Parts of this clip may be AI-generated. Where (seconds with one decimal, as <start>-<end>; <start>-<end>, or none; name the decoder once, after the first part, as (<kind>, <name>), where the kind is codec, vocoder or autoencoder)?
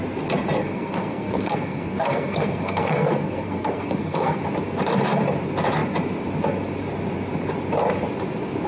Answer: 0.6-4.4 (codec, SNAC)